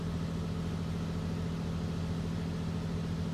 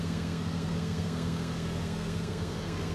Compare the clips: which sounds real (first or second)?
first